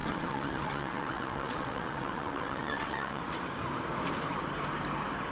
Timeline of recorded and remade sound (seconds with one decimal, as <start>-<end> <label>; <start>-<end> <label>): 0.0-3.2 remade; 3.2-5.3 recorded